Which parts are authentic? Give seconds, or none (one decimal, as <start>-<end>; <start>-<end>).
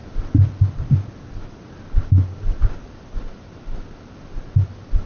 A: 0.0-5.1